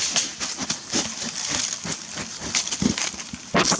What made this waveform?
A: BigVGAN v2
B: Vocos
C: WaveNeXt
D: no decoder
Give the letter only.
D